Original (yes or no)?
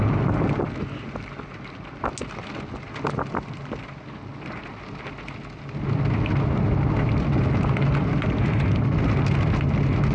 yes